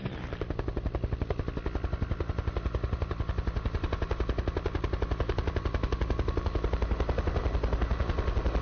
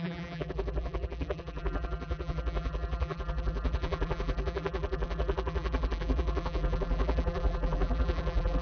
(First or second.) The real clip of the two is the first